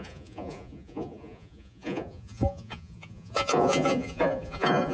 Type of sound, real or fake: fake